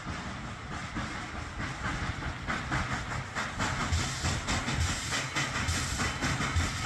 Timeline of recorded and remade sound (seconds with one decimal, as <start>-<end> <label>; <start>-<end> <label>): 0.0-6.9 recorded